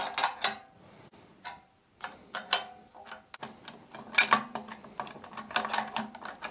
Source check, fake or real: real